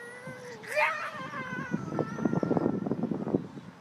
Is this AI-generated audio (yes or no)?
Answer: no